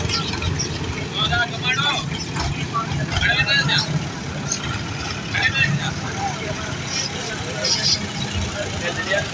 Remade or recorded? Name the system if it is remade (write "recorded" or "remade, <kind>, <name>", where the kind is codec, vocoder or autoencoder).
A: recorded